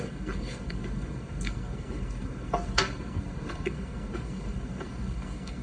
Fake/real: fake